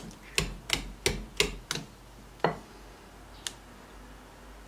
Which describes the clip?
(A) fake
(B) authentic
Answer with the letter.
B